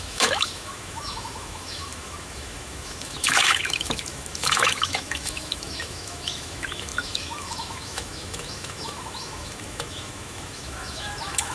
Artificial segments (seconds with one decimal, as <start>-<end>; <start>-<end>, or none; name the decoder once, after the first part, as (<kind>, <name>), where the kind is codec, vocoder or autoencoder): 0.0-11.5 (autoencoder, DAC-VAE)